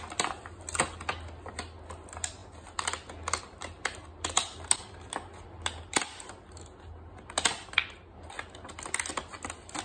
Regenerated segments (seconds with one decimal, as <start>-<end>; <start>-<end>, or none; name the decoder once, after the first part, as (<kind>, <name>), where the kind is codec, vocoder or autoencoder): none